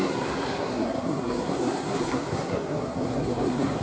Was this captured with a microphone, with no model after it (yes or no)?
no